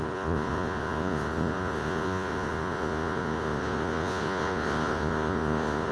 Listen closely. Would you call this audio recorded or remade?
remade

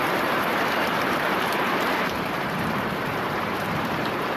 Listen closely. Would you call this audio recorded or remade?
remade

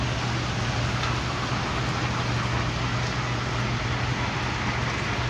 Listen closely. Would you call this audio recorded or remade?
recorded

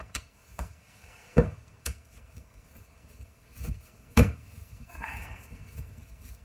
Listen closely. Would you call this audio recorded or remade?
remade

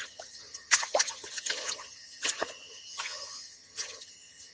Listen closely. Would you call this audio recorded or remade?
remade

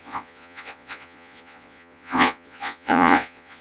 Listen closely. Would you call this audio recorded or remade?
remade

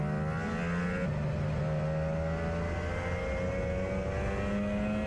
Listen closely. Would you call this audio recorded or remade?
recorded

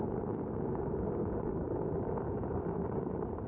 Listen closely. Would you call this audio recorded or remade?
recorded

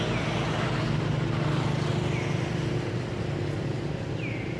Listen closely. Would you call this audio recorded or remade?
recorded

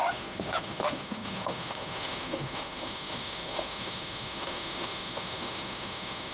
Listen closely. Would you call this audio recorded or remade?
remade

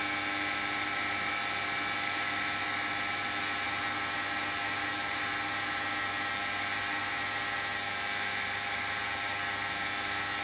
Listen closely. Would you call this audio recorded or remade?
recorded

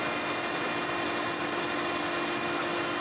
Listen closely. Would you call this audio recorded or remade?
recorded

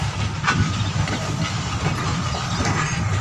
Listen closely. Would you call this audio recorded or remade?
recorded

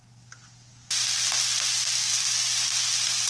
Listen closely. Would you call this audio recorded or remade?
recorded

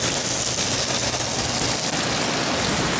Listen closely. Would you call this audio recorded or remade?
recorded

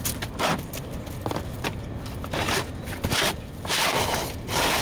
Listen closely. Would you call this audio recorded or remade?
recorded